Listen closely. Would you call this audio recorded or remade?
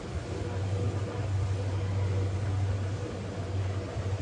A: recorded